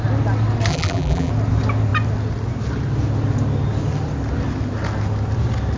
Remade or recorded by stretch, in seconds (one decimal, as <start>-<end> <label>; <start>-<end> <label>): 0.0-0.7 recorded; 0.7-1.3 remade; 1.3-5.8 recorded